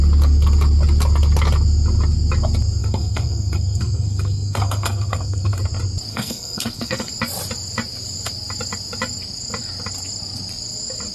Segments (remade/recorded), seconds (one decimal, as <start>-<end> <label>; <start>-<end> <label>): 0.0-2.8 recorded; 2.8-5.6 remade; 5.6-6.1 recorded; 6.1-7.1 remade; 7.1-11.1 recorded